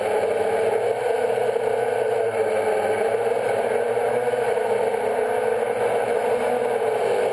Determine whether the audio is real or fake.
real